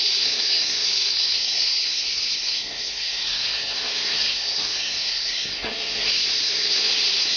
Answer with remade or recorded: remade